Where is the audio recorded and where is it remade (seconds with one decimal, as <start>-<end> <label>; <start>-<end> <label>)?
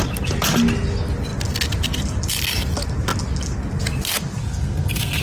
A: 0.0-4.4 recorded; 4.4-5.2 remade